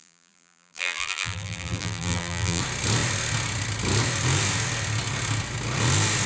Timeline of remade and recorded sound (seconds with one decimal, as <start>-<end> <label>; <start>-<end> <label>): 0.0-2.6 remade; 2.6-6.3 recorded